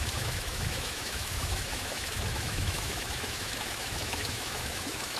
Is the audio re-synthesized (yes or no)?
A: yes